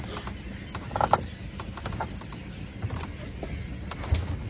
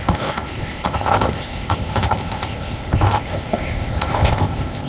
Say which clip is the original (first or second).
first